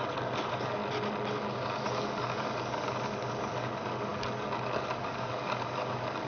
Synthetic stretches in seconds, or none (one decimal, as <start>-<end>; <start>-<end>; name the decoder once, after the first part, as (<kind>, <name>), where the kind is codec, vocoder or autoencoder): 0.0-0.8 (codec, DAC); 1.3-6.3